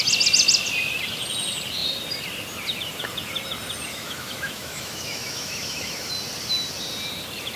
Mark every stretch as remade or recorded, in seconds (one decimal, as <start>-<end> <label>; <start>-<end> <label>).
0.0-3.9 recorded; 3.9-6.1 remade; 6.1-7.6 recorded